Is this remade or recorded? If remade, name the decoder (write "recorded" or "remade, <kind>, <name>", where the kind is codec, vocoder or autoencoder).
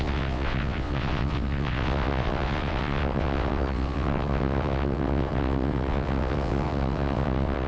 remade, vocoder, WaveNeXt